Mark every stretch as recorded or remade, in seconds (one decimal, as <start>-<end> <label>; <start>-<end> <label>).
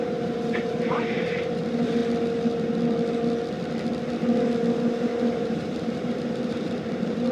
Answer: 0.0-2.0 remade; 2.0-5.0 recorded; 5.0-7.3 remade